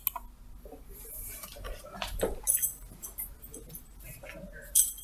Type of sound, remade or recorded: recorded